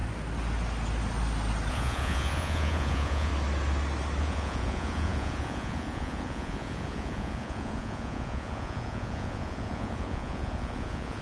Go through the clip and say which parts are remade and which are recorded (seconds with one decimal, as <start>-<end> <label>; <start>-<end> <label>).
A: 0.0-1.7 recorded; 1.7-3.3 remade; 3.3-4.2 recorded; 4.2-11.2 remade